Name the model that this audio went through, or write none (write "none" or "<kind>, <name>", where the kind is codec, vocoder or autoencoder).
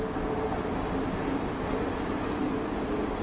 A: none